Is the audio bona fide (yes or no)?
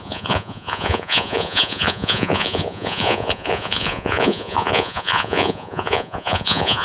no